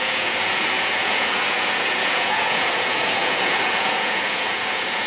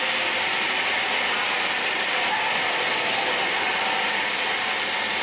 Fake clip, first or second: first